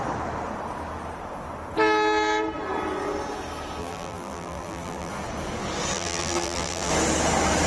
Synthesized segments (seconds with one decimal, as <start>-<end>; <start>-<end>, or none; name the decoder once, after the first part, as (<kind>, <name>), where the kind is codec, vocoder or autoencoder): 3.8-5.1 (vocoder, BigVGAN v2); 5.9-6.9